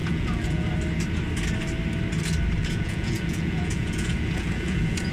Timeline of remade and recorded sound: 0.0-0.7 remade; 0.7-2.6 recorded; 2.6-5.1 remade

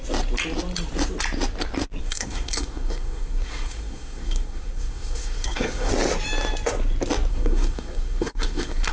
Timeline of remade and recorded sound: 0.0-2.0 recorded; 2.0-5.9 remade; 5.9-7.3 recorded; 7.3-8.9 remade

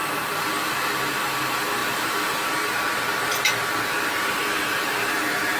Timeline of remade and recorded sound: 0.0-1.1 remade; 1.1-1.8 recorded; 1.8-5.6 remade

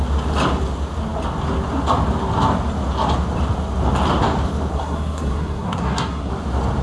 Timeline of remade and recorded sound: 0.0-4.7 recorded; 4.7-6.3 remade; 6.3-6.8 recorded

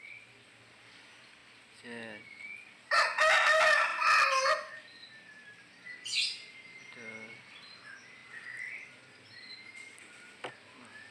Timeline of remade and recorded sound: 0.0-11.1 recorded

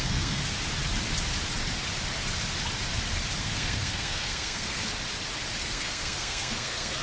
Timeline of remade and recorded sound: 0.0-0.4 remade; 0.4-3.4 recorded; 3.4-4.8 remade; 4.8-5.6 recorded; 5.6-7.0 remade